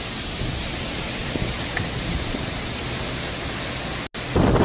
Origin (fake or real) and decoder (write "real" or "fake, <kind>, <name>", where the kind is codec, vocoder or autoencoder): real